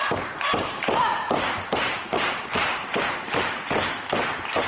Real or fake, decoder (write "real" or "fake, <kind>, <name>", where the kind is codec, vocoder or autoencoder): fake, vocoder, BigVGAN v2